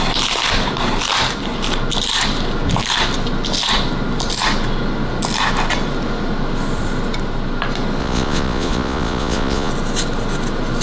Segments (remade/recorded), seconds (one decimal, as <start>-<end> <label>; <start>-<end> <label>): 0.0-8.0 recorded; 8.0-9.7 remade; 9.7-10.8 recorded